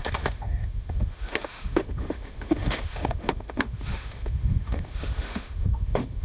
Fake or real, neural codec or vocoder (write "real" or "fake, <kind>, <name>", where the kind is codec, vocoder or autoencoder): fake, autoencoder, DAC-VAE